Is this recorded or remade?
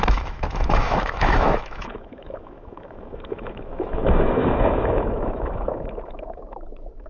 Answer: remade